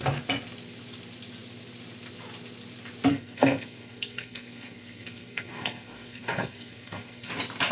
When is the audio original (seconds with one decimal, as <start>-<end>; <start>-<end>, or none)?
0.0-3.1; 7.3-7.7